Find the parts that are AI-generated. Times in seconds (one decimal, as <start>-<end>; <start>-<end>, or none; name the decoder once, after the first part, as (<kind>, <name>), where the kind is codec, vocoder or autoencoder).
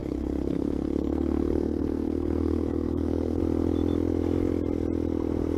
0.0-3.4 (codec, SNAC)